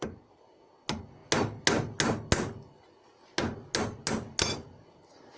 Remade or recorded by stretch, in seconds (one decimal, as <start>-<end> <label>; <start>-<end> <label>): 0.0-5.4 recorded